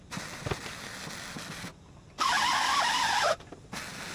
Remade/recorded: recorded